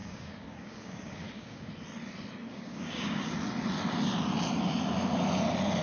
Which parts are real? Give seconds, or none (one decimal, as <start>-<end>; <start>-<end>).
1.7-2.5; 3.2-5.8